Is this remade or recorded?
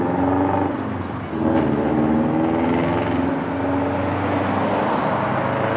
recorded